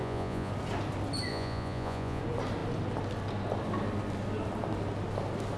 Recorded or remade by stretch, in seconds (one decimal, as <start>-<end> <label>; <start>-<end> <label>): 0.0-0.5 remade; 0.5-1.3 recorded; 1.3-2.2 remade; 2.2-5.6 recorded